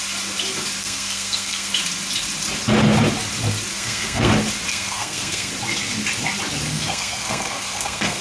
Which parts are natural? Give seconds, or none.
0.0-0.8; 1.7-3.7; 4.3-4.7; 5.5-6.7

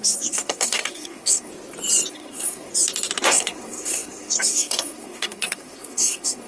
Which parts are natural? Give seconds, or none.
1.5-2.1; 2.7-3.3